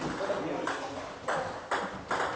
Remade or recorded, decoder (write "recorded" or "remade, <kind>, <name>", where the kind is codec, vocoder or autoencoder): recorded